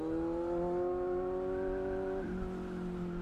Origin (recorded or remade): recorded